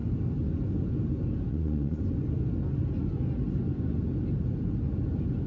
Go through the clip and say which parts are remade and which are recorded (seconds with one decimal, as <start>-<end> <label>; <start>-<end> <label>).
0.0-1.5 recorded; 1.5-2.0 remade; 2.0-5.5 recorded